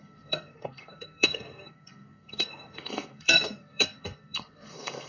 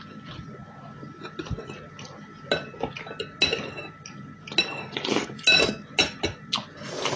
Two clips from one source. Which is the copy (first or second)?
first